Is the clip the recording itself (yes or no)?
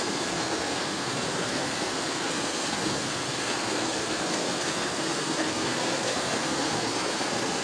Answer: no